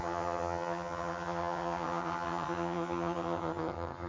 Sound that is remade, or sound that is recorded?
remade